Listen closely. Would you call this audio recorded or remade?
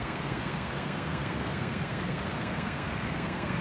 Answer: remade